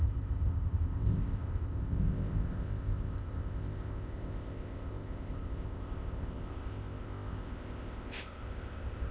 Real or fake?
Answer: fake